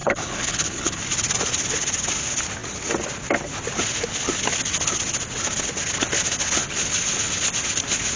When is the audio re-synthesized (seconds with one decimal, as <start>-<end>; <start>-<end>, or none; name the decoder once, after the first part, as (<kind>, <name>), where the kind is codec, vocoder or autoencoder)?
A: 0.0-1.0 (codec, HILCodec)